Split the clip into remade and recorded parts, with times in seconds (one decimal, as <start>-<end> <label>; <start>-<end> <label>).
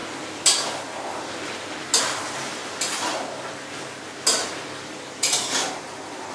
0.0-2.0 recorded; 2.0-2.6 remade; 2.6-5.8 recorded; 5.8-6.3 remade